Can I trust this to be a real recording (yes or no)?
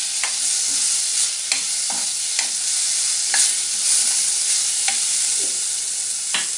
yes